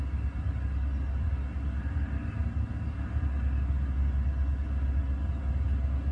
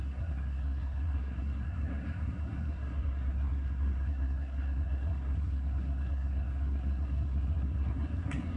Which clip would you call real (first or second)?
first